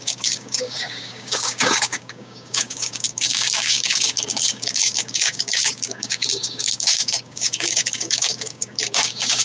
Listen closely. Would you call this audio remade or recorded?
remade